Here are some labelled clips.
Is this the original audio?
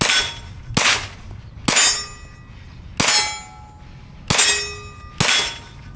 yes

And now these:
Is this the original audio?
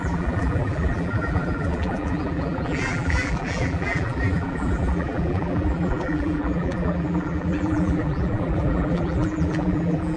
no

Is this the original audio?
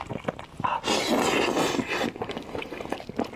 yes